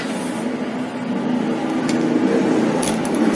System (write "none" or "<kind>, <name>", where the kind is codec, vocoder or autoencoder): none